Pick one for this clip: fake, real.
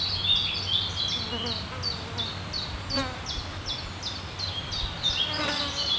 real